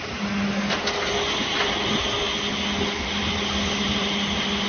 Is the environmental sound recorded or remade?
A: recorded